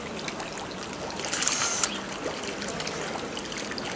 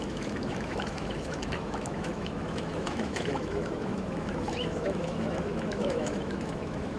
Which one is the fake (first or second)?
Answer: second